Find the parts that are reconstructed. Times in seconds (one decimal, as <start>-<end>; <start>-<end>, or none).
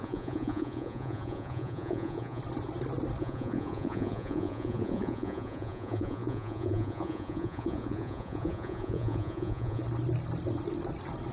0.0-2.4; 3.2-9.8